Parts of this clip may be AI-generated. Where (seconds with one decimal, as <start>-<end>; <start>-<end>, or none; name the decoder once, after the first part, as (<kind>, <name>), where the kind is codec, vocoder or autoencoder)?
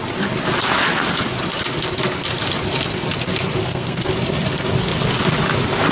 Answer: 3.6-4.1 (codec, SNAC)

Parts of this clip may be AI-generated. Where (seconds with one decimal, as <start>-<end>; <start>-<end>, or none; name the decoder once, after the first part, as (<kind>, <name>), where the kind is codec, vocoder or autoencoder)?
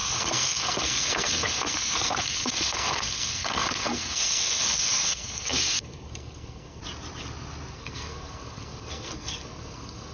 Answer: 0.0-6.8 (codec, SNAC); 7.7-10.1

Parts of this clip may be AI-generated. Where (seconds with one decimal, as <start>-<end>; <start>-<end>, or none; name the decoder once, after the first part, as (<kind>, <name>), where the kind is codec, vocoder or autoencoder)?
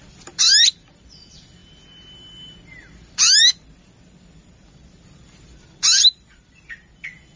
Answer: none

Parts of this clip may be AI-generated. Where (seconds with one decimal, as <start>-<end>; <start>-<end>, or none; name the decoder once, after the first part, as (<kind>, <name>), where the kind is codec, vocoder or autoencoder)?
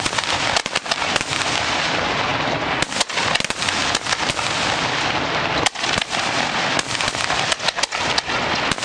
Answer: none